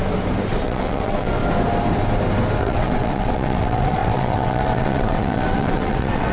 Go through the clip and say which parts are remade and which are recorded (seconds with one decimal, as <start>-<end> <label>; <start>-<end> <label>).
0.0-0.6 recorded; 0.6-1.4 remade; 1.4-2.6 recorded; 2.6-6.3 remade